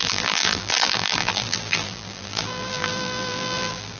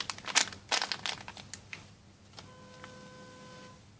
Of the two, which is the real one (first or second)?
second